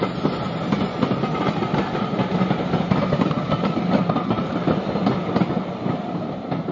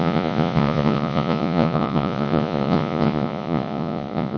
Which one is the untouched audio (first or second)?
first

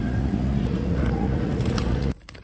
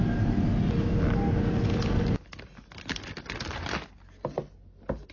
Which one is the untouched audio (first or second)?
second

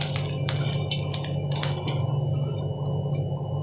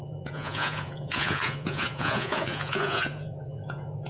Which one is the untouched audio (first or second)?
first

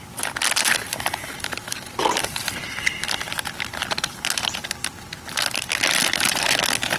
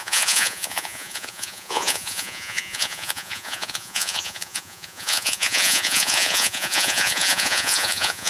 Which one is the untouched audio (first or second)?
first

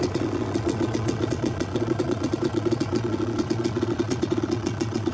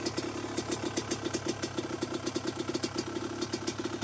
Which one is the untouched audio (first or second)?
second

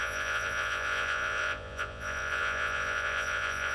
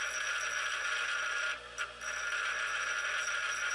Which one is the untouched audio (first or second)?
second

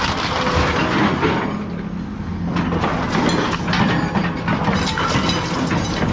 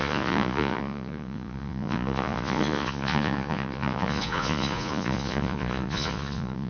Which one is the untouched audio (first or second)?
first